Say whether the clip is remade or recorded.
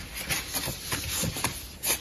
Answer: recorded